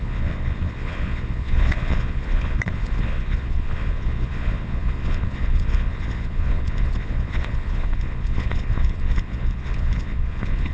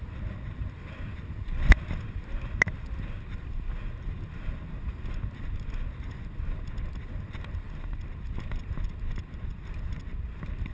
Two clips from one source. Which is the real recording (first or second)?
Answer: second